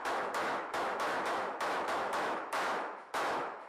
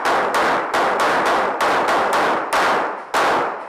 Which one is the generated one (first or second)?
first